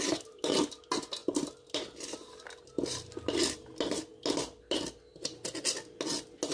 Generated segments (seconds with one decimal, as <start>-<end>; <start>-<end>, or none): none